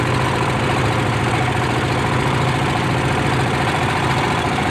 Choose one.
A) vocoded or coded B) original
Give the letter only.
A